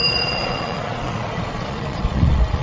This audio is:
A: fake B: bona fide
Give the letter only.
A